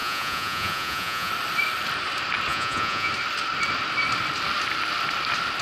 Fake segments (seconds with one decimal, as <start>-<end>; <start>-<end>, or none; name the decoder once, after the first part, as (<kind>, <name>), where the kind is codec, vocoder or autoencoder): 0.0-1.3 (vocoder, Vocos); 2.5-3.1